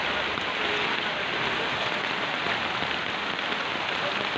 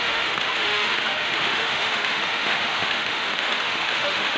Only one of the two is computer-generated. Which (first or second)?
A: second